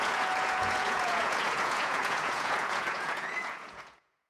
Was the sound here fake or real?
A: fake